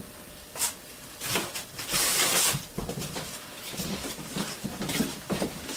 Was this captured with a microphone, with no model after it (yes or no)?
yes